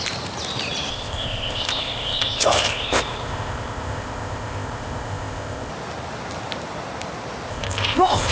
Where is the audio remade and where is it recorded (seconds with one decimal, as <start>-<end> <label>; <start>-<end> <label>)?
0.0-0.9 recorded; 0.9-5.7 remade; 5.7-7.5 recorded; 7.5-8.3 remade